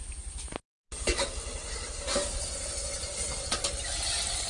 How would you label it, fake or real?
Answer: real